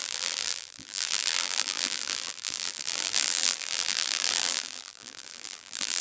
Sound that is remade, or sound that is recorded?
remade